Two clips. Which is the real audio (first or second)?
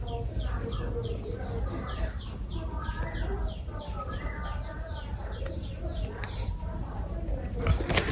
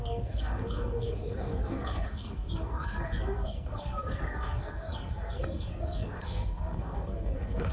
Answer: first